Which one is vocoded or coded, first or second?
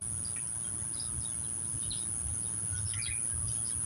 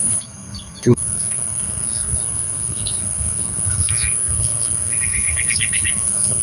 second